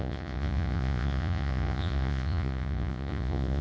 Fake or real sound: fake